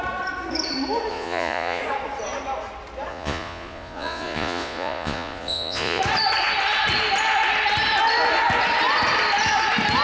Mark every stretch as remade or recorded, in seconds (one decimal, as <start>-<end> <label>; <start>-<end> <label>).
0.0-1.1 recorded; 1.1-1.8 remade; 1.8-3.1 recorded; 3.1-6.0 remade; 6.0-10.0 recorded